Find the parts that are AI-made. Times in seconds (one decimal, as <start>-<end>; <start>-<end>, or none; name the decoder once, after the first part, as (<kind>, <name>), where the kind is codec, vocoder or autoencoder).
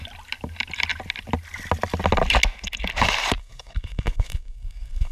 3.4-5.1 (codec, SNAC)